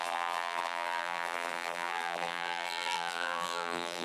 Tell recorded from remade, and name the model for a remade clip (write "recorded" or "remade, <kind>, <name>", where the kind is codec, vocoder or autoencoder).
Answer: remade, vocoder, BigVGAN v2